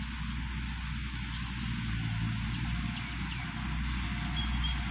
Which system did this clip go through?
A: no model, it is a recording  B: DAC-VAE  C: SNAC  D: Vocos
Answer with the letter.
A